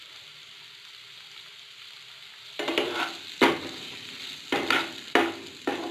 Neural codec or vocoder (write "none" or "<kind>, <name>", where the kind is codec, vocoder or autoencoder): none